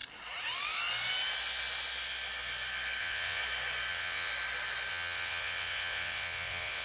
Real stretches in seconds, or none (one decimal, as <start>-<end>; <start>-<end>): 0.0-3.0; 3.4-3.9; 4.3-4.9